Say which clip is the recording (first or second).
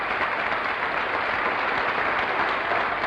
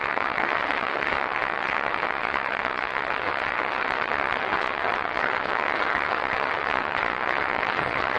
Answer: first